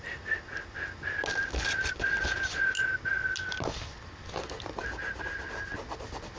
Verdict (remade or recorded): recorded